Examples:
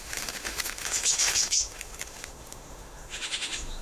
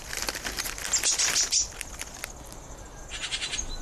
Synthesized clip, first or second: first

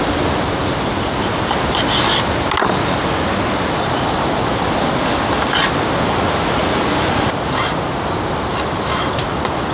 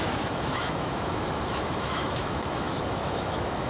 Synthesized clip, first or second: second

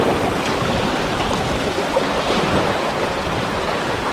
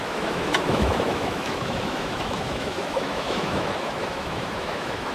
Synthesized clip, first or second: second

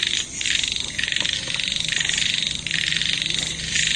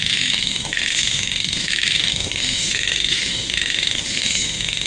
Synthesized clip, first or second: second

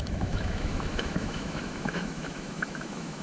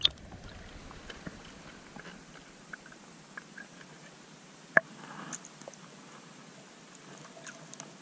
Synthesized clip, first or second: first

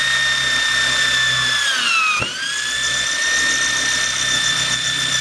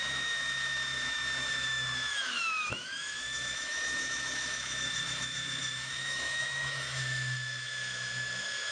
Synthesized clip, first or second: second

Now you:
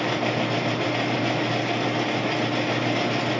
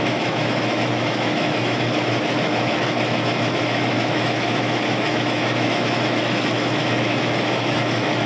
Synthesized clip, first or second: second